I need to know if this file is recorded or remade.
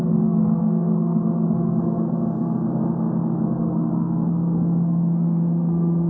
remade